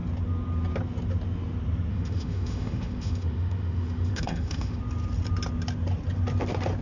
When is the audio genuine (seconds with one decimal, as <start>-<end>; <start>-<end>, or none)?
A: 0.0-1.9; 4.8-6.8